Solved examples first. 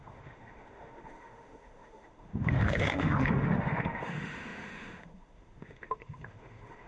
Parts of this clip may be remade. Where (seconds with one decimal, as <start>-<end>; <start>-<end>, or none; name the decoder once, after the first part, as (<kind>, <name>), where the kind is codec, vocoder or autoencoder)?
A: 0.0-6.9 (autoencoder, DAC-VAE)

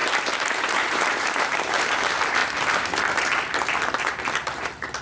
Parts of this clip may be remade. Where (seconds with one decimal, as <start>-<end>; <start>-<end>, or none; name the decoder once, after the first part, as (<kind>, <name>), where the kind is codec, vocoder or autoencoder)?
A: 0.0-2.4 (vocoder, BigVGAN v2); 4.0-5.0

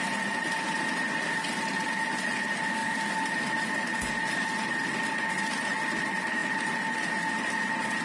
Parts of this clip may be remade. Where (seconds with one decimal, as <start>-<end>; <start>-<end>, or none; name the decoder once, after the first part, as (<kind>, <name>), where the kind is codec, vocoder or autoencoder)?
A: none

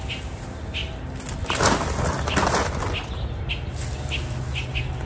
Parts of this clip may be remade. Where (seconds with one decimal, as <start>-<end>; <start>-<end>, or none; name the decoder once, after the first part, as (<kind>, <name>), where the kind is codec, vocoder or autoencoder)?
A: none

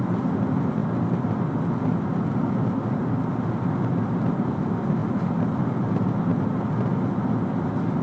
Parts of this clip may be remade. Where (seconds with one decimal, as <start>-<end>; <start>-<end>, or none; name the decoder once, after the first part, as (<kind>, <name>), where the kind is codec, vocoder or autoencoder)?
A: none